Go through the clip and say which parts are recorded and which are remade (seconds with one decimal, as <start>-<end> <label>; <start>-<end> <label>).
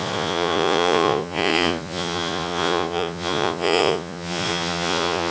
0.0-5.3 remade